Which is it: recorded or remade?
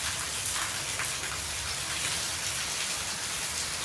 recorded